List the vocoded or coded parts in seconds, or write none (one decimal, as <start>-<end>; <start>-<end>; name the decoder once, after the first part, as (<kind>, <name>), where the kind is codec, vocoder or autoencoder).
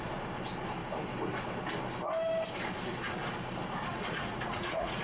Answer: 3.9-5.0 (vocoder, Vocos)